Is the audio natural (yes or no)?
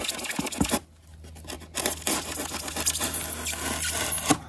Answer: yes